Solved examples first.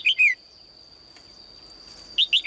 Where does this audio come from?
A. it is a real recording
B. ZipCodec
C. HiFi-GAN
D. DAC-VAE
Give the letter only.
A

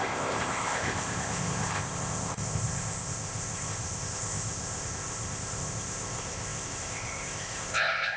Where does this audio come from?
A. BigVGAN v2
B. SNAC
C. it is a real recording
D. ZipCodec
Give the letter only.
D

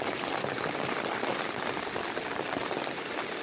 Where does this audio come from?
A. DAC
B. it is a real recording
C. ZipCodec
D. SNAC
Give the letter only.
B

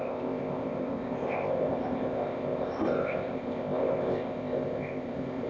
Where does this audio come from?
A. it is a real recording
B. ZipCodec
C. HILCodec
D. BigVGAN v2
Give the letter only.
B